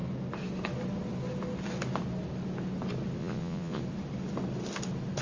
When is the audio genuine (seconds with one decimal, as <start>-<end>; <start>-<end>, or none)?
0.0-3.2; 3.8-5.2